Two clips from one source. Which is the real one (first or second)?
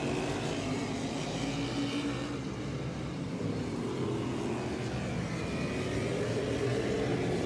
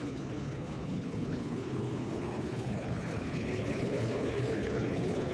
first